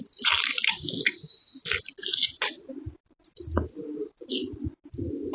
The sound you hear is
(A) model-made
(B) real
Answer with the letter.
B